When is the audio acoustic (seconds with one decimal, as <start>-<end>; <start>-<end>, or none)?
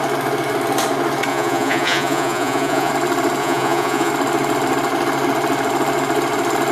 0.0-1.3; 2.9-3.4; 4.1-6.7